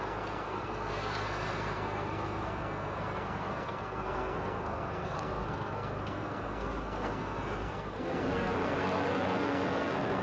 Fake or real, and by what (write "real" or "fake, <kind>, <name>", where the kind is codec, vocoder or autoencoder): fake, codec, SNAC